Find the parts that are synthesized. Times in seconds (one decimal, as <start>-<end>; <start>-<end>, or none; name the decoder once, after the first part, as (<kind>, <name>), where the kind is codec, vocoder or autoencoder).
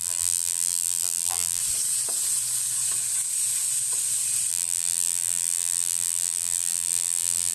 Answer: 0.0-1.6 (vocoder, BigVGAN v2); 4.5-7.5